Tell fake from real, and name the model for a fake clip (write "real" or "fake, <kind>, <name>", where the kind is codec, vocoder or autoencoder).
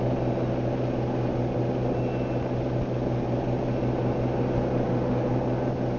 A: real